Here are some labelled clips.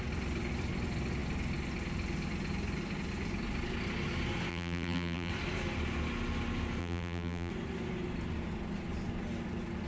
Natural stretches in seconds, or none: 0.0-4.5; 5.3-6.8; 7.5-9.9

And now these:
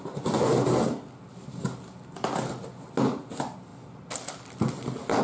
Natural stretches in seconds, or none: 0.0-5.2

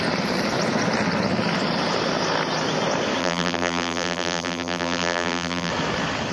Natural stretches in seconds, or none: 0.0-3.2; 5.7-6.3

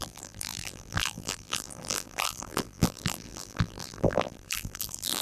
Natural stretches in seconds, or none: none

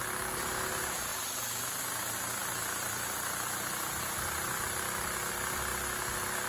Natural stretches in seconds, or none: 1.1-1.8; 5.7-6.5

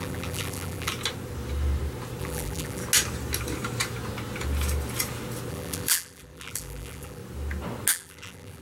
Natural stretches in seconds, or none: 0.9-2.2; 2.8-5.5; 7.2-7.9

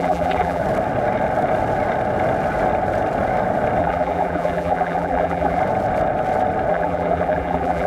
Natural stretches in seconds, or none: 0.6-3.8; 5.6-6.7

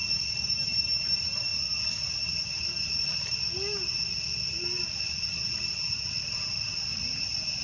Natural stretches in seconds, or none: 0.0-0.8; 1.5-6.1